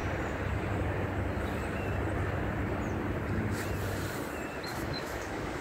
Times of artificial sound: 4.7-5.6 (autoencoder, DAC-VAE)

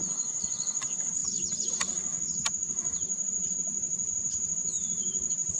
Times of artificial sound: none

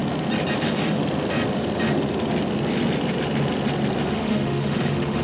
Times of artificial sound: 0.6-1.0 (autoencoder, DAC-VAE); 4.1-5.2

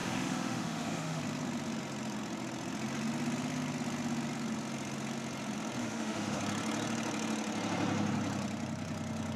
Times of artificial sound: 0.0-1.2 (autoencoder, DAC-VAE); 5.8-6.4

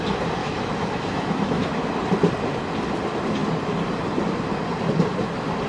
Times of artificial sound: 0.4-1.9 (autoencoder, DAC-VAE)

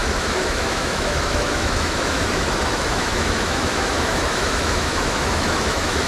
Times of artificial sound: 0.0-6.1 (autoencoder, DAC-VAE)

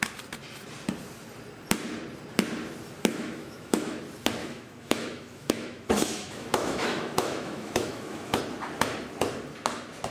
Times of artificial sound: 3.1-4.0 (autoencoder, DAC-VAE); 4.4-8.4